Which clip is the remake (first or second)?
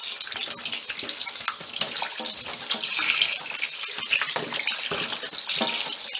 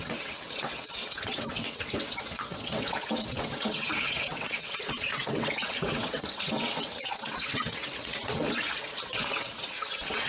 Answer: second